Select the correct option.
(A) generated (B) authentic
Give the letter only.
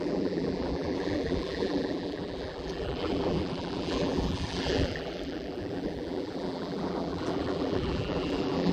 A